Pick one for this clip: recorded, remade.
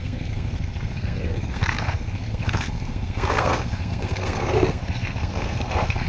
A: remade